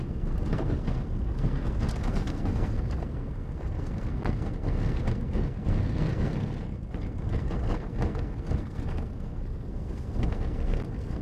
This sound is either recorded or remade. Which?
remade